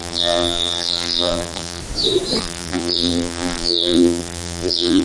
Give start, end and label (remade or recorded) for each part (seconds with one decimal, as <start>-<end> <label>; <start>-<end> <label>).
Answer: 0.0-1.8 remade; 1.8-2.4 recorded; 2.4-5.0 remade